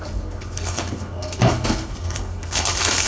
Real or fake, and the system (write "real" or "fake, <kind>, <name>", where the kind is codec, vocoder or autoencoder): fake, codec, SNAC